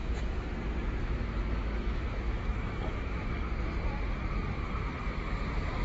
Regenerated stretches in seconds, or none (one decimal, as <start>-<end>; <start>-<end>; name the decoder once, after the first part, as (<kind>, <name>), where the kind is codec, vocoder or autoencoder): 0.0-0.5 (autoencoder, DAC-VAE); 1.0-3.4